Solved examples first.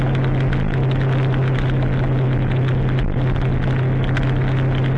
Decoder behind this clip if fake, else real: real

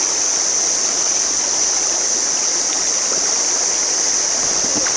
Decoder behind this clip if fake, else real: real